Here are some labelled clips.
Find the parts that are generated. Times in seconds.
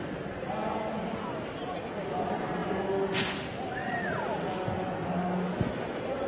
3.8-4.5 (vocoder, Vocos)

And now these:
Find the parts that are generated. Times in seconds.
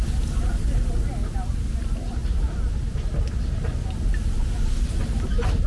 none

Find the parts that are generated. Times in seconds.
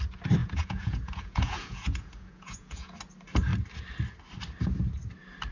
0.4-3.0 (vocoder, Vocos)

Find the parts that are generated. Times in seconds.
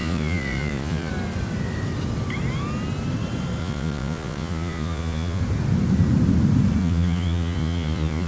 0.0-1.1 (vocoder, Vocos); 3.6-5.4; 6.8-8.3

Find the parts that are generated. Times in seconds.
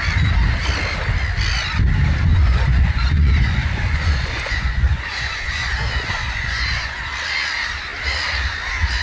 2.3-7.1 (vocoder, Vocos)